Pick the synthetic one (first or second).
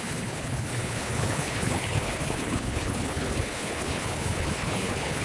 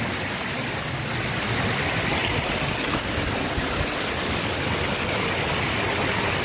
first